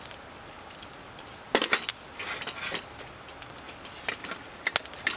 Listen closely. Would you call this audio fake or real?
real